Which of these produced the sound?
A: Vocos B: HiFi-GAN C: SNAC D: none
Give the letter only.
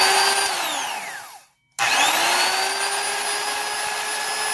D